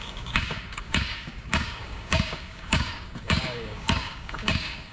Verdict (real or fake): fake